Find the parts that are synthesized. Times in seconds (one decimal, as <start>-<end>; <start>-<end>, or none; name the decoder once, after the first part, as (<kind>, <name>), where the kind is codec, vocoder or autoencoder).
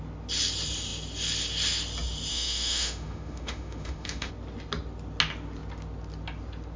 2.3-4.3 (autoencoder, DAC-VAE)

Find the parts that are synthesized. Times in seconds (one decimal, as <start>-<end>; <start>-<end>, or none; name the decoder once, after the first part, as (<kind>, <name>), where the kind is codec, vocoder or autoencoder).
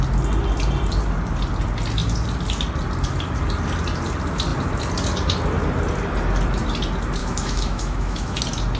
7.2-8.4 (autoencoder, DAC-VAE)